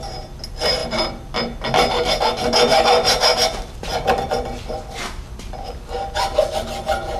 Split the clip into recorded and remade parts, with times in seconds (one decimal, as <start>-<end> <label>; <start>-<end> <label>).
0.0-7.2 recorded